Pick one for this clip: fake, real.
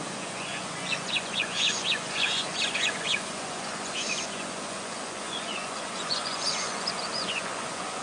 fake